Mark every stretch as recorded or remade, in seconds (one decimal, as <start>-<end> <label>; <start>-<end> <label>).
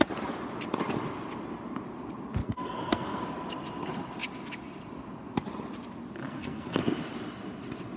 0.0-2.4 recorded; 2.4-3.2 remade; 3.2-6.2 recorded; 6.2-6.8 remade; 6.8-8.0 recorded